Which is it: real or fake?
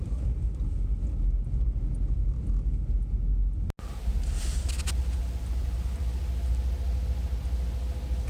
real